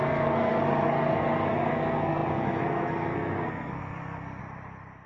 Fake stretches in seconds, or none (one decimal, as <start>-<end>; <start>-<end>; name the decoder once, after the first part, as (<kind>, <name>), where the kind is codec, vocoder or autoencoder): 0.0-4.4 (codec, SNAC)